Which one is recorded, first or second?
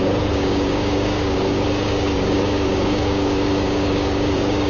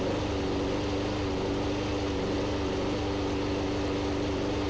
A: second